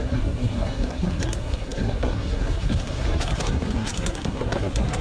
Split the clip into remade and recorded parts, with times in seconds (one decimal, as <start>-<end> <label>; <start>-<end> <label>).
0.0-5.0 remade